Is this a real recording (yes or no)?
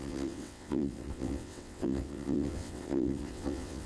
no